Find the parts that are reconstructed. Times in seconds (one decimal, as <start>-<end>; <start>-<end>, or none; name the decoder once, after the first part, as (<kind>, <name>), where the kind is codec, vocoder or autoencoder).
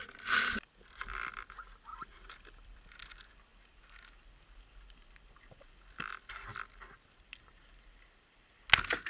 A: 1.9-2.9 (vocoder, BigVGAN v2)